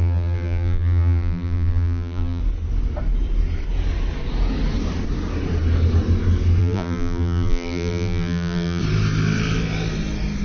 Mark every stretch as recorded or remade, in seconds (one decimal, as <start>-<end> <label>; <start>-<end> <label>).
0.0-2.4 remade; 2.4-6.6 recorded; 6.6-8.8 remade; 8.8-10.4 recorded